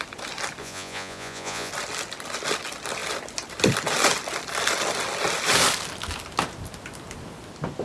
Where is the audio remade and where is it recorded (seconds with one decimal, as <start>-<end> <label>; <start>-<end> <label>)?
0.0-0.6 recorded; 0.6-1.7 remade; 1.7-7.8 recorded